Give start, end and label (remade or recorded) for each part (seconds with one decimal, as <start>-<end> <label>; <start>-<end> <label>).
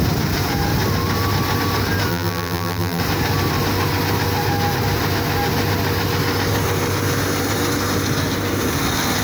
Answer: 0.0-2.1 recorded; 2.1-3.0 remade; 3.0-9.2 recorded